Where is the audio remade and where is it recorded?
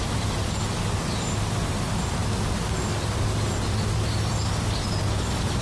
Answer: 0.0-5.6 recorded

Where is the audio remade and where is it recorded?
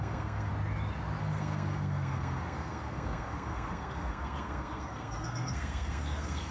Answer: 0.0-0.5 remade; 0.5-1.2 recorded; 1.2-6.5 remade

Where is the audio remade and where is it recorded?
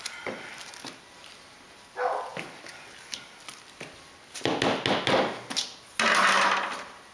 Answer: 0.0-7.1 recorded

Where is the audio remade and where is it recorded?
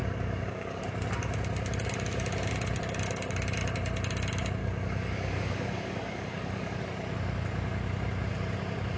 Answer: 0.0-0.8 remade; 0.8-4.6 recorded; 4.6-6.8 remade; 6.8-9.0 recorded